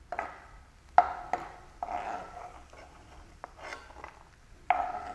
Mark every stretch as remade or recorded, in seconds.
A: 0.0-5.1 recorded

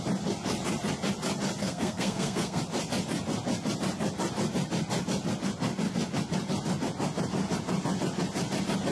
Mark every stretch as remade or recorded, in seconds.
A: 0.0-1.6 recorded; 1.6-2.6 remade; 2.6-8.9 recorded

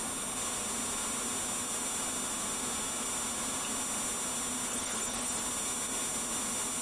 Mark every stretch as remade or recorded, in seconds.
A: 0.0-4.7 recorded; 4.7-5.4 remade; 5.4-6.8 recorded

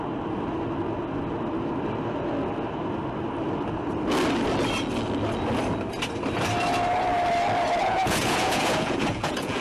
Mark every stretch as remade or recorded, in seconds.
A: 0.0-7.8 recorded; 7.8-9.6 remade

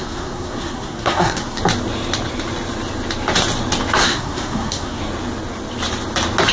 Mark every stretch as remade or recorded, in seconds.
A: 0.0-1.6 remade; 1.6-4.0 recorded; 4.0-5.0 remade; 5.0-6.5 recorded

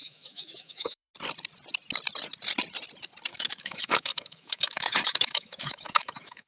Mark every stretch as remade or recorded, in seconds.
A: 0.0-1.1 remade; 1.1-3.3 recorded; 3.3-6.5 remade